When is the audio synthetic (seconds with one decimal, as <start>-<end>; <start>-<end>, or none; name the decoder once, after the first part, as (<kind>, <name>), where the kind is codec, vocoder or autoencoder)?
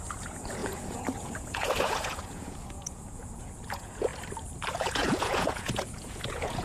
0.0-4.1 (vocoder, Vocos); 4.7-6.6